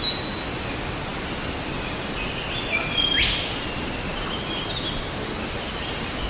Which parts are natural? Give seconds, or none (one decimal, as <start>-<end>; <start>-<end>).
0.0-6.3